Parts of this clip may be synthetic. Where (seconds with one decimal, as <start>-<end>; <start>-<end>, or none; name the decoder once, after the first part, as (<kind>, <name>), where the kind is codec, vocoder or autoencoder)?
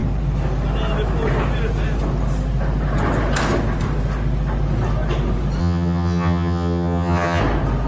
5.6-7.4 (vocoder, HiFi-GAN)